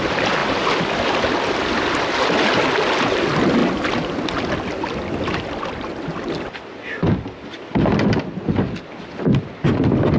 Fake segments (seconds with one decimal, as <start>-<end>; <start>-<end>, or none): none